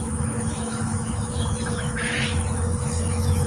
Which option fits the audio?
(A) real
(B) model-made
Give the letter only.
B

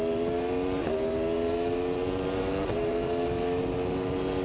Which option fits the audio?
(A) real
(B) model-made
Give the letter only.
B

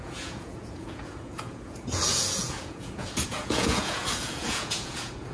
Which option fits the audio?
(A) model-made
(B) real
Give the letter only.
A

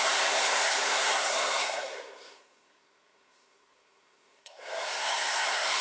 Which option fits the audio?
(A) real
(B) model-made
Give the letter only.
B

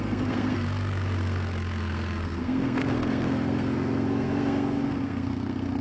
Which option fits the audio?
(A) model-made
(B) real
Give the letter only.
A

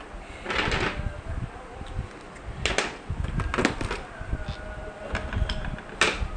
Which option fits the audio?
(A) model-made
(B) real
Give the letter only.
B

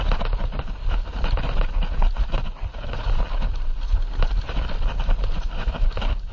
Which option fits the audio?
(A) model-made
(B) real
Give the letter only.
B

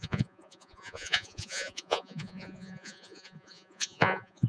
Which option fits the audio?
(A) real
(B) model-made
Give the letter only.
B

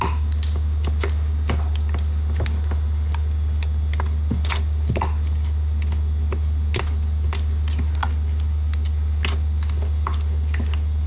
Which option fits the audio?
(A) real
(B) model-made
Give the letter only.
A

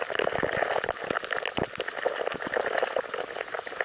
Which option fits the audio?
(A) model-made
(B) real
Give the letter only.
B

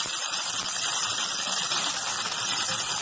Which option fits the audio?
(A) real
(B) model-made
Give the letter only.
A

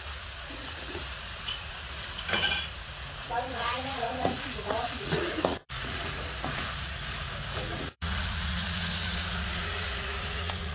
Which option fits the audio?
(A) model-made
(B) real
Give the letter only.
A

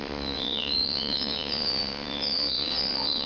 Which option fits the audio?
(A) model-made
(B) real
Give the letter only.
A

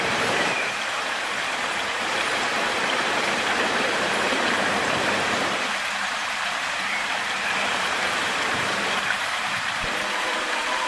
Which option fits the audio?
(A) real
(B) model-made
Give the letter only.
B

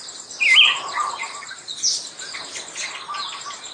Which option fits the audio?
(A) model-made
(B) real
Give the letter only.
B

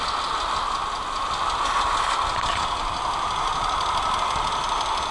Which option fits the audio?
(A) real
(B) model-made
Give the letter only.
A